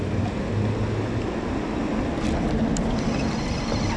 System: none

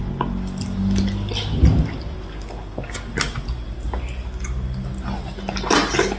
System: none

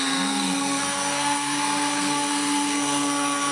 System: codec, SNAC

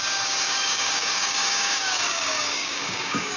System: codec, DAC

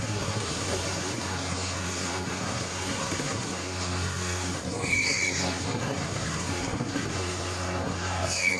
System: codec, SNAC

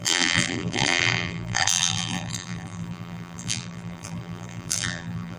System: vocoder, BigVGAN v2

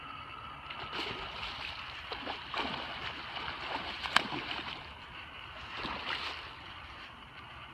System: none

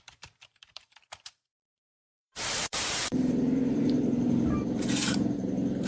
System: vocoder, BigVGAN v2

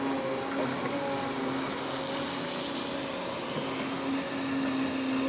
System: none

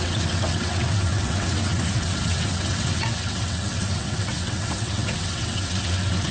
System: vocoder, WaveNeXt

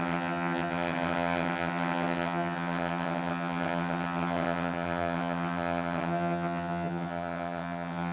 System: vocoder, HiFi-GAN